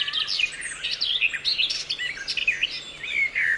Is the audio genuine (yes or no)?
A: yes